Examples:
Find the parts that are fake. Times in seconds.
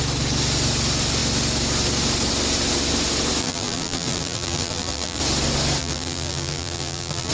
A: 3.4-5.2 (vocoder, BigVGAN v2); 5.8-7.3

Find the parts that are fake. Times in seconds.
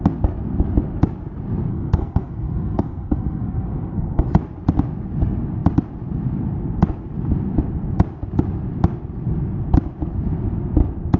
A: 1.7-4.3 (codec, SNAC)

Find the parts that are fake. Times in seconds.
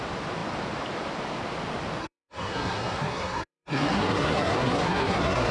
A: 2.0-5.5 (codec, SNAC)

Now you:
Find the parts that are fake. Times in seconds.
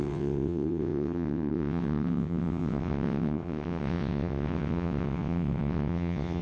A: 0.0-6.4 (vocoder, WaveNeXt)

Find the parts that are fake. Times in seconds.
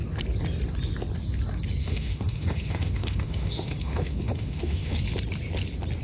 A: 1.8-5.0 (autoencoder, DAC-VAE)